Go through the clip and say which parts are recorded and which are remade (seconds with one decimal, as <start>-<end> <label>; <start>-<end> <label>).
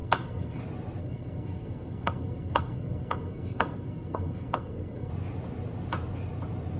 0.0-0.6 remade; 0.6-1.0 recorded; 1.0-5.1 remade; 5.1-6.8 recorded